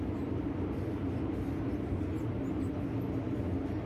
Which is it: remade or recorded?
recorded